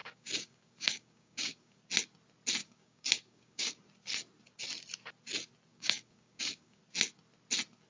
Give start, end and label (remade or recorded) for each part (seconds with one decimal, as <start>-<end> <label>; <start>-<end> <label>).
0.0-1.8 remade; 1.8-2.6 recorded; 2.6-3.8 remade; 3.8-5.7 recorded; 5.7-6.8 remade; 6.8-7.9 recorded